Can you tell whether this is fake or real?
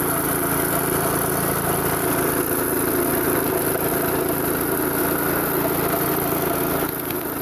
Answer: real